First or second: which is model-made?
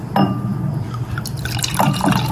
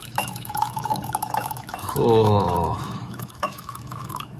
second